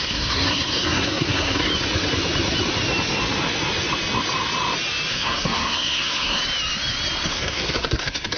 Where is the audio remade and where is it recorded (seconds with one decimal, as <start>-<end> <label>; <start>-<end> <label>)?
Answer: 0.0-1.7 remade; 1.7-5.1 recorded; 5.1-6.4 remade; 6.4-7.3 recorded; 7.3-8.4 remade